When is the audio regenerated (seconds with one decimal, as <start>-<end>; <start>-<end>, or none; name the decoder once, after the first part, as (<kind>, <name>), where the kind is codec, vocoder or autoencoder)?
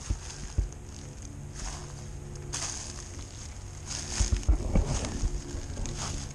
none